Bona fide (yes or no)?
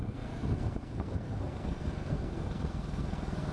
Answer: no